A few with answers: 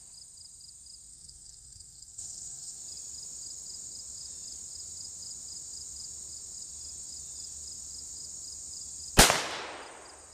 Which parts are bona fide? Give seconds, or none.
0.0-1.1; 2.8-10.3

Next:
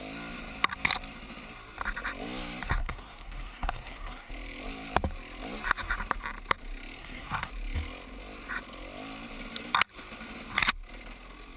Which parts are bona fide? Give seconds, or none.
0.0-2.8; 4.3-7.0; 7.5-11.6

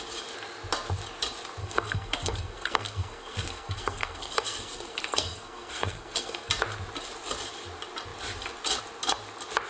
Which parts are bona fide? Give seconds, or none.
0.0-1.6; 6.5-9.7